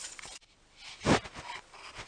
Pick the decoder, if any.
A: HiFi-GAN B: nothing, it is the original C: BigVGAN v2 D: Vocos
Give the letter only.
B